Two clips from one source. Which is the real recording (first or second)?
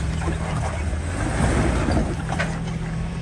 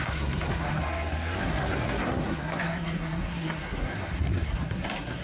first